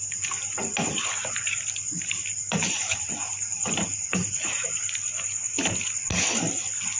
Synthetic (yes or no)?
no